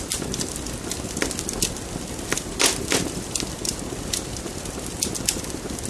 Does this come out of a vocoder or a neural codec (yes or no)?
no